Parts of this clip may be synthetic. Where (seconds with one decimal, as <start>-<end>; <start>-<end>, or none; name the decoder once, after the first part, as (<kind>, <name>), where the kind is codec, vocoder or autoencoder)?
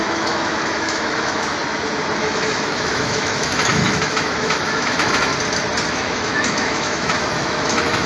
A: 0.0-1.6 (autoencoder, DAC-VAE); 2.2-5.3; 5.9-8.1